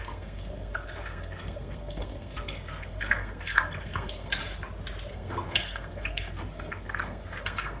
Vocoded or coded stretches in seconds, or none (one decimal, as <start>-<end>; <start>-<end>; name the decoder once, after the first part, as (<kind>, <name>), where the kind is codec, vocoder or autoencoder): 0.0-4.4 (codec, SNAC); 5.1-7.8